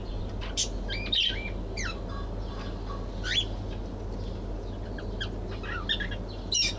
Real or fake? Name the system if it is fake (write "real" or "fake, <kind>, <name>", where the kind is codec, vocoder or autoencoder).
real